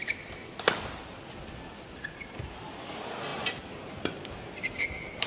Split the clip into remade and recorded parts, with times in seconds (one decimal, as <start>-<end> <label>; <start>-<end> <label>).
0.0-5.3 recorded